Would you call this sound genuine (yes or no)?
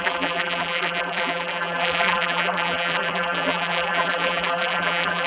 no